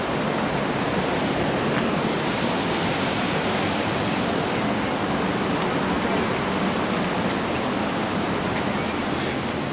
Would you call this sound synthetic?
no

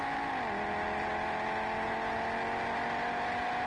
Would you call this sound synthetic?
no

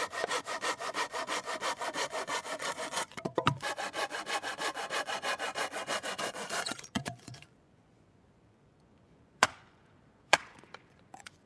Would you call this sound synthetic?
yes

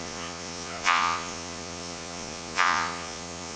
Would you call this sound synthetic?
yes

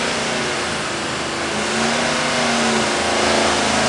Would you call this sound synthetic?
no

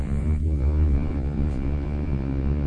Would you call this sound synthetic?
yes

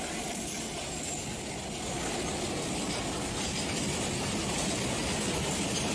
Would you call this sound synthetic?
no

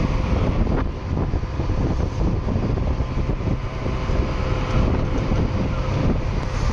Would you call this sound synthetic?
no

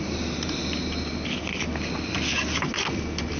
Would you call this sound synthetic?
no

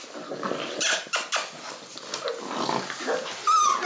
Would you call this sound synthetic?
no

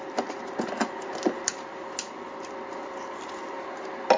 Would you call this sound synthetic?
no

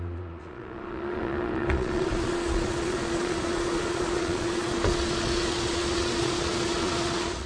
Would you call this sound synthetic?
yes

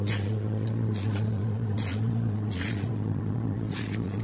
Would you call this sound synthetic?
yes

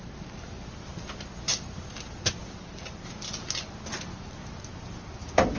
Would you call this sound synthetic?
no